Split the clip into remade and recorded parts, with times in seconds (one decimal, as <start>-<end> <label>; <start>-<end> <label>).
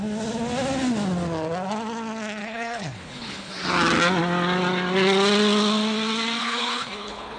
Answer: 0.0-2.4 recorded; 2.4-3.5 remade; 3.5-6.4 recorded; 6.4-7.4 remade